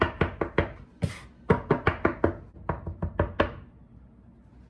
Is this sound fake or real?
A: real